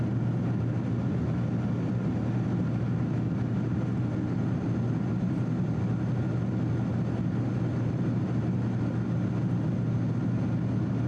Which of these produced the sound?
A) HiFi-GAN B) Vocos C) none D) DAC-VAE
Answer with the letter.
C